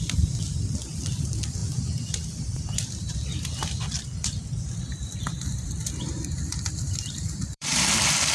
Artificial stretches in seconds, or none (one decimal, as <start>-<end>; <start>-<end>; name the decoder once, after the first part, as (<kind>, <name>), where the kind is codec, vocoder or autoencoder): 0.0-1.6 (vocoder, BigVGAN v2); 2.4-8.3